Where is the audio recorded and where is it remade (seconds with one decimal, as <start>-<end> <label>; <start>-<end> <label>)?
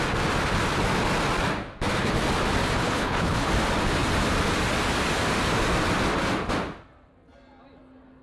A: 0.0-2.8 recorded; 2.8-3.5 remade; 3.5-8.2 recorded